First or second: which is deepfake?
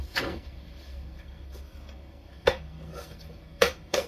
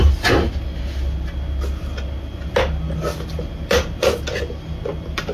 first